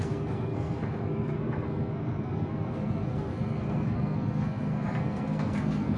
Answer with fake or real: fake